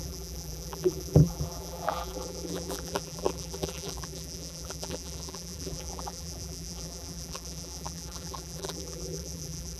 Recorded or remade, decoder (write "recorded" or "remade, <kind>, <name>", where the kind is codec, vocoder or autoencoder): remade, vocoder, BigVGAN v2